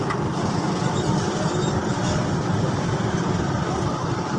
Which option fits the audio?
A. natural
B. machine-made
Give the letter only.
B